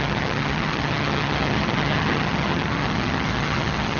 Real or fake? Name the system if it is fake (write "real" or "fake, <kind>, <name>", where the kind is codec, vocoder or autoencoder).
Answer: fake, vocoder, HiFi-GAN